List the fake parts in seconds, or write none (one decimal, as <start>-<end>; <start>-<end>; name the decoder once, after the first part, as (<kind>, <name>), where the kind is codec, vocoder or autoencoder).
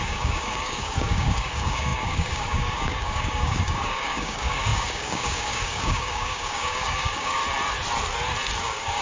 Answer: 0.0-7.4 (codec, DAC); 8.6-9.0